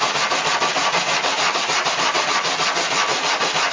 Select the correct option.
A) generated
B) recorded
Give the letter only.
B